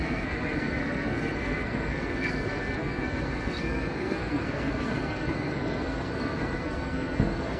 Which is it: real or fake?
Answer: fake